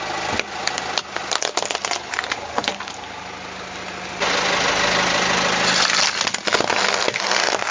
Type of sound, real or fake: real